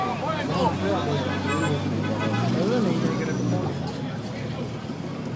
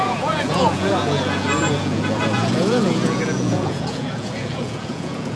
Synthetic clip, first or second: second